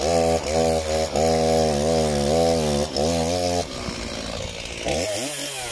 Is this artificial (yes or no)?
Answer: no